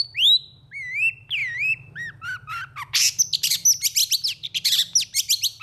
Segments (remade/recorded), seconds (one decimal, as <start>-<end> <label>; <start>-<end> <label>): 0.0-5.6 recorded